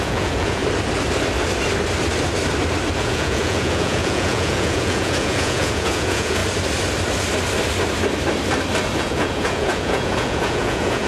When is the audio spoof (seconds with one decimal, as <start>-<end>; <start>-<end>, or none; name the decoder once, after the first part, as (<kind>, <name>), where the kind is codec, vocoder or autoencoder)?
0.0-0.6 (vocoder, Vocos); 3.0-6.4; 9.0-11.1